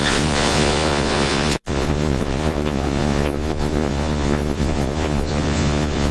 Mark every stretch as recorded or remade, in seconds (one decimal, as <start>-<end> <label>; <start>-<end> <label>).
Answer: 0.0-6.1 remade